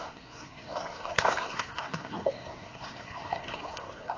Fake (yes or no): yes